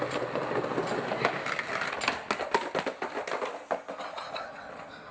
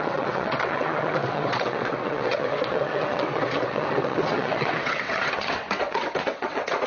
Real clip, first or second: first